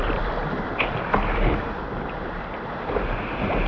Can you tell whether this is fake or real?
real